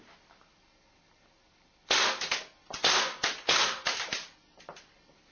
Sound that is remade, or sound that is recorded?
recorded